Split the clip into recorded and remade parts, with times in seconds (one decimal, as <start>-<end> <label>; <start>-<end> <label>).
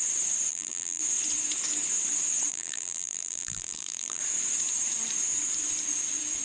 0.0-0.5 recorded; 0.5-1.0 remade; 1.0-2.5 recorded; 2.5-4.2 remade; 4.2-6.4 recorded